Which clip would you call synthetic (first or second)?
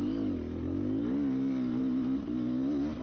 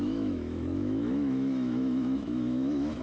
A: second